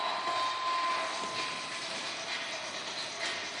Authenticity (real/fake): real